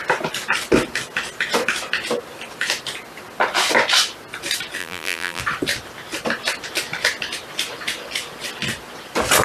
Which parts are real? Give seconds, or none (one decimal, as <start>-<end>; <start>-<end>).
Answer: 0.0-4.8; 5.4-9.4

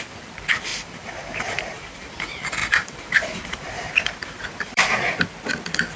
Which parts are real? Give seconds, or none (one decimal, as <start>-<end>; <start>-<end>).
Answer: 0.0-0.7; 2.1-2.6; 4.8-6.0

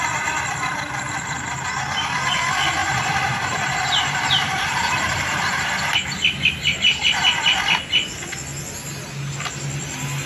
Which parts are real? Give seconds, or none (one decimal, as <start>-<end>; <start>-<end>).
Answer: 0.0-2.8; 5.7-10.3

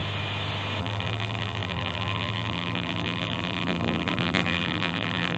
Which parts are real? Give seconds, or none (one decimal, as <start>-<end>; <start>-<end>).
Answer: 0.0-0.8